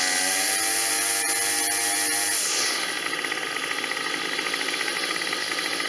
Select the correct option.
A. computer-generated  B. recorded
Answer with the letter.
B